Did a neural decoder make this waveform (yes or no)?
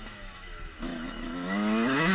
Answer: yes